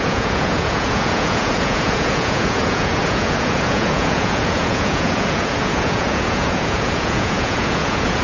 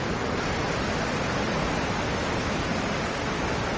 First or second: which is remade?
first